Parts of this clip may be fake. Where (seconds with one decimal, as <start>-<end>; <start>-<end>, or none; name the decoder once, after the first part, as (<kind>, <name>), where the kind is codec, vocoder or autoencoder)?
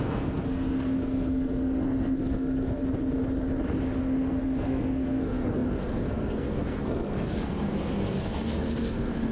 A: 0.0-2.8 (codec, SNAC); 4.0-9.3